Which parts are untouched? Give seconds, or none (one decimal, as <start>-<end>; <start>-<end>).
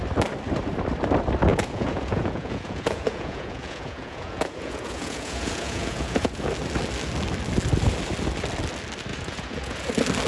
0.0-1.5; 6.5-9.1; 9.9-10.3